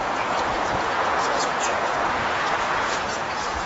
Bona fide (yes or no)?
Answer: no